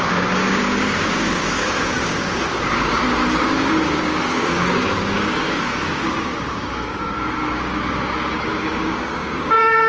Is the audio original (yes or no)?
no